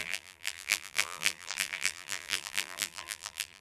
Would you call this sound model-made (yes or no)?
yes